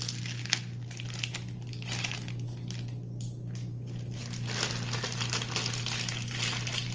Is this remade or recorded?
recorded